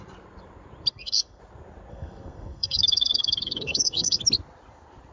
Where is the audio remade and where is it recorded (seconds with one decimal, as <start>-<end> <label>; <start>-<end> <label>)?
0.0-0.9 recorded; 0.9-1.4 remade; 1.4-1.9 recorded; 1.9-4.2 remade; 4.2-5.1 recorded